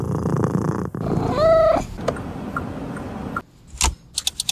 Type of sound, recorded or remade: recorded